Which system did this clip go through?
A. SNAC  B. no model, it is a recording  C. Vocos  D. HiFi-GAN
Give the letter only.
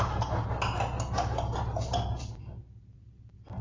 B